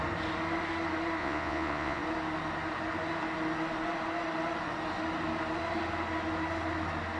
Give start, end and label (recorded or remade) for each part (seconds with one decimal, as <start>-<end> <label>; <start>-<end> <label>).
0.0-1.2 recorded; 1.2-2.0 remade; 2.0-7.2 recorded